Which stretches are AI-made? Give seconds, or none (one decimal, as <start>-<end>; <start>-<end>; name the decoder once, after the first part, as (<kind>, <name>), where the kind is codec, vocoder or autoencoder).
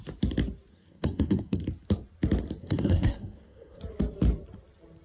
0.7-1.6 (codec, SNAC); 2.6-3.8